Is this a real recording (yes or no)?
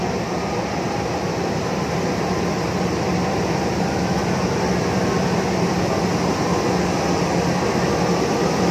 yes